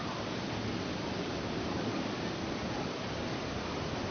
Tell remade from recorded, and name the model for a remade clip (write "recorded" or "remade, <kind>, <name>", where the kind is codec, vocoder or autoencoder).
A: remade, vocoder, BigVGAN v2